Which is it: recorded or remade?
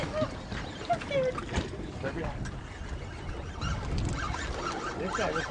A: recorded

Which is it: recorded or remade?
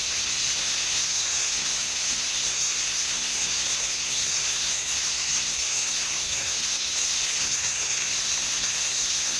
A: remade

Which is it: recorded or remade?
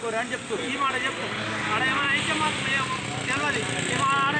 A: recorded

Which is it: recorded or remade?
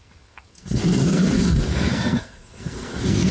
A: remade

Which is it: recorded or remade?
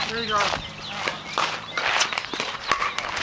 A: recorded